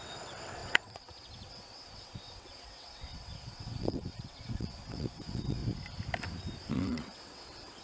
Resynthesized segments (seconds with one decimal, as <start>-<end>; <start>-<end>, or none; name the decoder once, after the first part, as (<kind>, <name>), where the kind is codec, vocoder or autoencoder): 0.0-5.6 (vocoder, WaveNeXt); 6.7-7.8